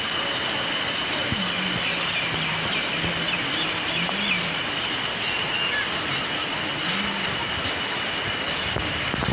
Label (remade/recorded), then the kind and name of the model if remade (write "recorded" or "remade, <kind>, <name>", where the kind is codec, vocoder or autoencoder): recorded